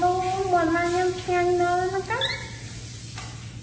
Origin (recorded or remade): recorded